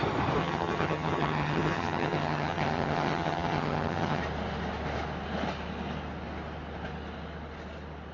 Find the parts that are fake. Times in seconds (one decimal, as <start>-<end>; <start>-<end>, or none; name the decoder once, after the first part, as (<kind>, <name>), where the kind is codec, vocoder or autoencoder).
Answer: 0.4-4.2 (vocoder, HiFi-GAN)